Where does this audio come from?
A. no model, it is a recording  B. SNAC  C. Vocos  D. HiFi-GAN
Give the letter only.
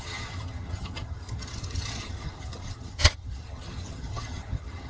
D